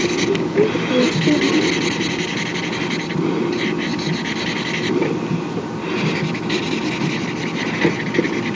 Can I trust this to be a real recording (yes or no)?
yes